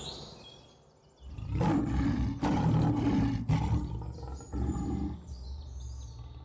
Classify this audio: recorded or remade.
recorded